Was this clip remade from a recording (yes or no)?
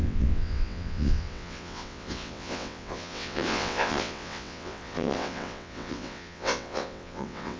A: yes